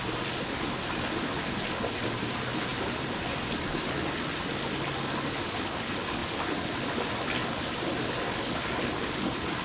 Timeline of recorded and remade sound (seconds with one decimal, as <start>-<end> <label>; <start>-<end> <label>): 0.0-9.6 recorded